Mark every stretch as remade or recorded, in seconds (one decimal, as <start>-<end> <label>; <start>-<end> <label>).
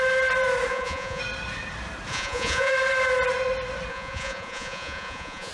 0.0-0.7 recorded; 0.7-1.2 remade; 1.2-2.1 recorded; 2.1-2.7 remade; 2.7-3.9 recorded; 3.9-5.5 remade